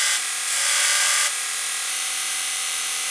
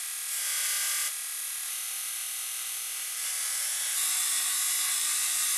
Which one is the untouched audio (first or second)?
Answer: second